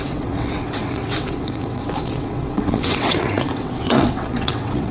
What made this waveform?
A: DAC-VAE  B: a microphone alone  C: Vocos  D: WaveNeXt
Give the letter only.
D